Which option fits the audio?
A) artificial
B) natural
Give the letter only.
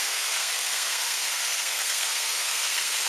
A